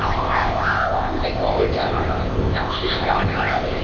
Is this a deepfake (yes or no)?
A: yes